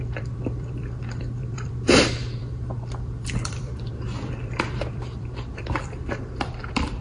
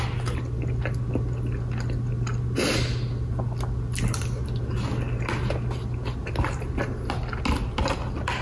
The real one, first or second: second